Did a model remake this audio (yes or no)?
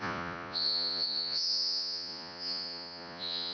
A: yes